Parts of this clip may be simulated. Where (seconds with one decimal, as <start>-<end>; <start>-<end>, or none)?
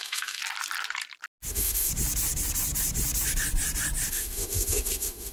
0.0-0.4; 1.5-1.9; 4.1-5.3